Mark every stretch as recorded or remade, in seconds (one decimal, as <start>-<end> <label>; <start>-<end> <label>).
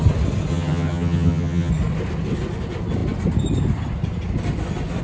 0.0-0.5 recorded; 0.5-1.7 remade; 1.7-5.0 recorded